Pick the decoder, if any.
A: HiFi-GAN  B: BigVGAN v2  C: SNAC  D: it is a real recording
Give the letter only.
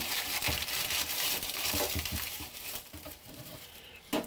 B